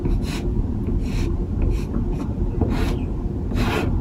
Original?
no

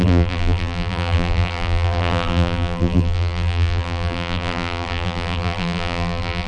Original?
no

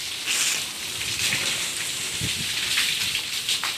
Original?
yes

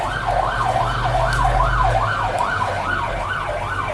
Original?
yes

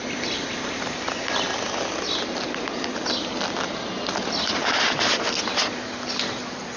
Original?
yes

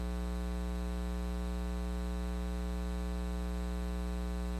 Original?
yes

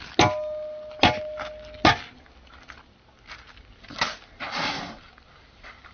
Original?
yes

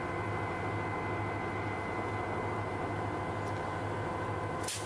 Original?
yes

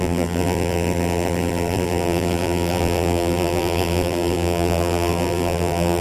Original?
no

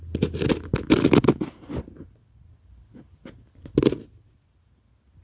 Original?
yes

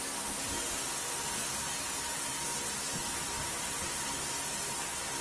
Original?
yes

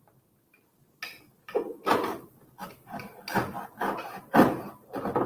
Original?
yes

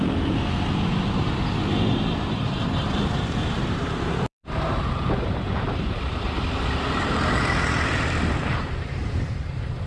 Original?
no